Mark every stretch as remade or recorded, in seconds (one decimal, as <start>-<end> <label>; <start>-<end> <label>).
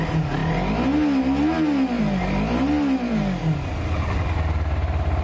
0.0-5.2 recorded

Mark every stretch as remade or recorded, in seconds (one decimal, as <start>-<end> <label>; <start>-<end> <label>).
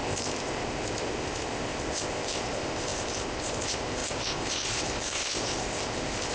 0.0-6.3 remade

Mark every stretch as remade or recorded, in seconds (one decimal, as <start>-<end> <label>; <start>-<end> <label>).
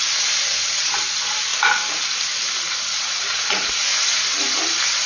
0.0-1.5 remade; 1.5-2.8 recorded; 2.8-3.9 remade; 3.9-5.1 recorded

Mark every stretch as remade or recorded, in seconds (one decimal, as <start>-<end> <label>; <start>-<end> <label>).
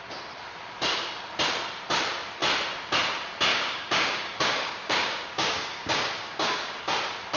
0.0-3.5 recorded; 3.5-6.9 remade; 6.9-7.4 recorded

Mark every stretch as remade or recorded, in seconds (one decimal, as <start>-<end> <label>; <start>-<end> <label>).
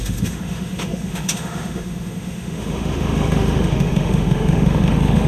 0.0-5.3 remade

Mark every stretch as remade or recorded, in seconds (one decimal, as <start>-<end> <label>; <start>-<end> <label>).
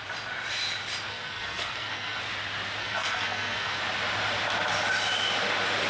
0.0-1.1 recorded; 1.1-2.2 remade; 2.2-2.8 recorded; 2.8-3.8 remade; 3.8-5.9 recorded